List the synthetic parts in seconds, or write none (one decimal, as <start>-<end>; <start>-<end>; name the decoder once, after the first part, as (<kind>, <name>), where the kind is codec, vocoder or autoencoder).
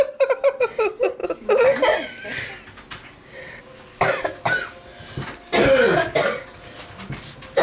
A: none